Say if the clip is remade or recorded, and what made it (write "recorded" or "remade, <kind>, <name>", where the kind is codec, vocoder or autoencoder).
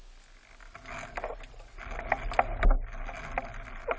recorded